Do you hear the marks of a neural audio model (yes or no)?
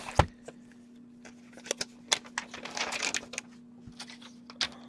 no